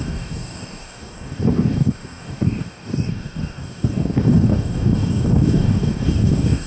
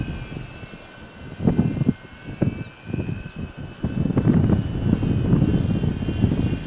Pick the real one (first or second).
second